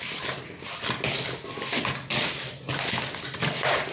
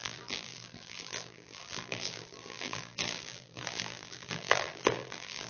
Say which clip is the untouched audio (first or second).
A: first